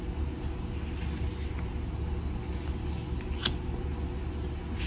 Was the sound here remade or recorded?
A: recorded